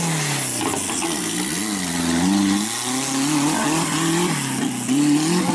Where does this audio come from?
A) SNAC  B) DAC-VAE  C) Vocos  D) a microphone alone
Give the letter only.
D